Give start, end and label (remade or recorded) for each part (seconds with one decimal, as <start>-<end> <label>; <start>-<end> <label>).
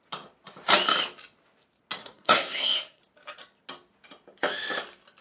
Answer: 0.0-2.0 recorded; 2.0-3.0 remade; 3.0-5.2 recorded